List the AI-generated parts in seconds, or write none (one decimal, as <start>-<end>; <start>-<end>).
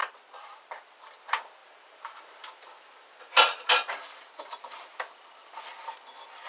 1.6-3.1